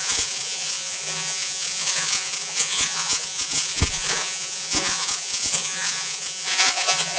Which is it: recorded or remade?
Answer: remade